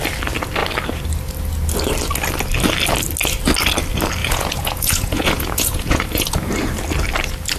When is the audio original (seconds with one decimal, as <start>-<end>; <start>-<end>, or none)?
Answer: 0.0-4.2; 6.5-7.6